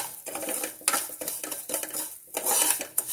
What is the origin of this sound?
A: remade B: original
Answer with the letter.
B